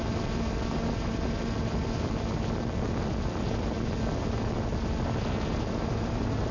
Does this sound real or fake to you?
real